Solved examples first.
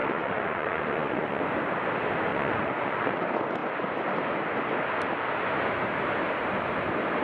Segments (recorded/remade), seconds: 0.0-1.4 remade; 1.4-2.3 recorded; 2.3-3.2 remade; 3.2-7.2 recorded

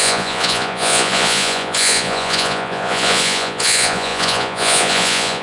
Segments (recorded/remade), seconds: 0.0-5.4 remade

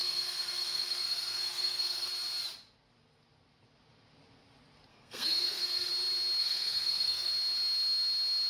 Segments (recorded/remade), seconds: 0.0-2.1 remade; 2.1-4.9 recorded; 4.9-5.9 remade; 5.9-6.4 recorded; 6.4-7.3 remade; 7.3-8.5 recorded